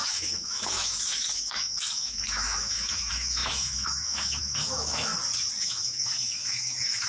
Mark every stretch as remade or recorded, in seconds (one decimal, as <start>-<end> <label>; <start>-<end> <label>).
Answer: 0.0-5.1 remade; 5.1-5.6 recorded; 5.6-7.1 remade